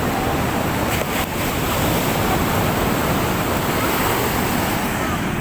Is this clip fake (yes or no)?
no